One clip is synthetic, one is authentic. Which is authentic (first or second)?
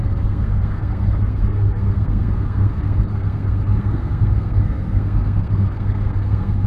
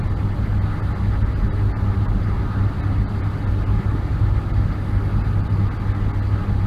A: second